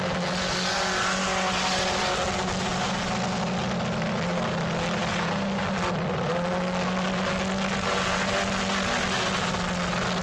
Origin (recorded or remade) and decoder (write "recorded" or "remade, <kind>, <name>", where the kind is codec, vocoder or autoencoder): recorded